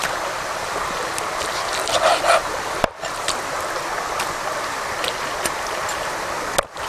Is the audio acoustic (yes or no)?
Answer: yes